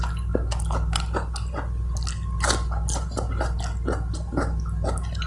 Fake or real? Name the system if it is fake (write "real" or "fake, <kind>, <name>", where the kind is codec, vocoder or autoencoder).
real